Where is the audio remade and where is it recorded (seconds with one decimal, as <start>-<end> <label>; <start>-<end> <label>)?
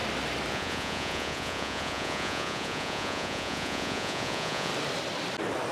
0.0-0.5 recorded; 0.5-4.7 remade; 4.7-5.7 recorded